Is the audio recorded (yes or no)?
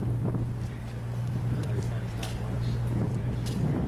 no